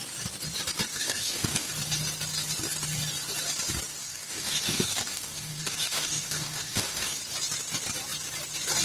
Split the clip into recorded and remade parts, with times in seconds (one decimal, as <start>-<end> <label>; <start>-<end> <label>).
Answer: 0.0-0.9 recorded; 0.9-1.7 remade; 1.7-4.0 recorded; 4.0-7.2 remade; 7.2-8.8 recorded